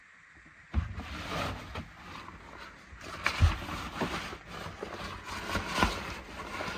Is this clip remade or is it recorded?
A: recorded